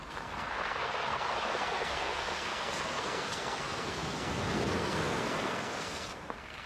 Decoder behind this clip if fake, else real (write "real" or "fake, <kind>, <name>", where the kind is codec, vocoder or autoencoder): fake, codec, SNAC